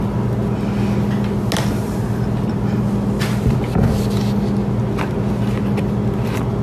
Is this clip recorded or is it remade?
recorded